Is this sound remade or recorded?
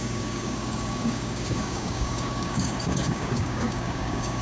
remade